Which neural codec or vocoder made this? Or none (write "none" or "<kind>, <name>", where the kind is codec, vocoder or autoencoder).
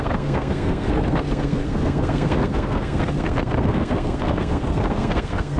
codec, SNAC